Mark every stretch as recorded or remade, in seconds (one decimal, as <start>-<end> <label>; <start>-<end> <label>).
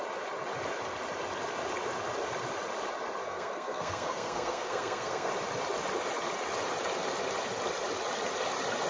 0.0-3.2 recorded; 3.2-5.3 remade; 5.3-8.9 recorded